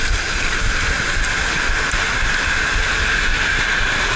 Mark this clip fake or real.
real